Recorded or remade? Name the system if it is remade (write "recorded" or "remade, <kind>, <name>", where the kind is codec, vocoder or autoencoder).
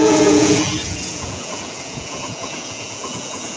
remade, vocoder, Vocos